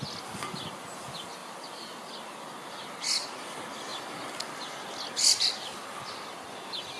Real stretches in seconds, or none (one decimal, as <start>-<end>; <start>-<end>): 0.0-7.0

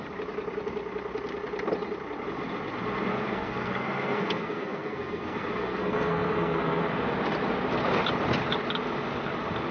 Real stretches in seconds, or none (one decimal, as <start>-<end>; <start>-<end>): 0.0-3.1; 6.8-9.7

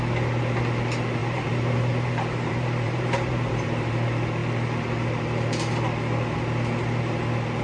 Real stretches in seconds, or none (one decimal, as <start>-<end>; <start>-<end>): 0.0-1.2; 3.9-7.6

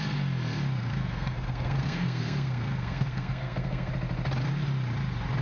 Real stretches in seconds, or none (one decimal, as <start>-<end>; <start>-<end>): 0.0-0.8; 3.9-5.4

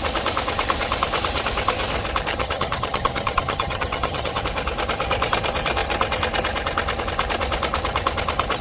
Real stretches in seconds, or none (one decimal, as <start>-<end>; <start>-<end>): 0.0-2.3; 4.4-8.6